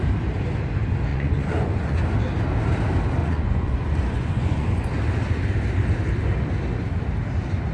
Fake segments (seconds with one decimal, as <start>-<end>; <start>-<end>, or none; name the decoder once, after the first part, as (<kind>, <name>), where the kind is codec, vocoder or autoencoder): 1.1-2.0 (vocoder, Vocos); 3.2-4.9